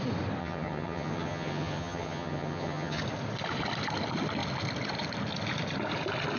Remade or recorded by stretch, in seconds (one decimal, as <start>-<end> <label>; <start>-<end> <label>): 0.0-0.4 recorded; 0.4-3.0 remade; 3.0-6.4 recorded